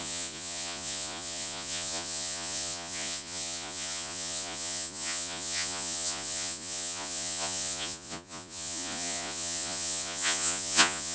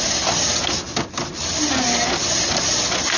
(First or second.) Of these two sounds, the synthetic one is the first